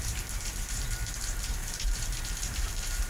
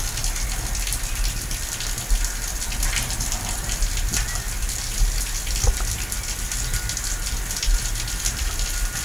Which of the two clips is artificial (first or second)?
first